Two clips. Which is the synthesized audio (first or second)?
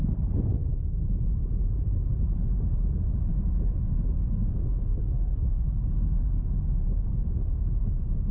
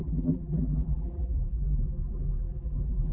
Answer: second